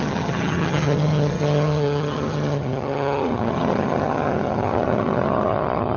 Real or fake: fake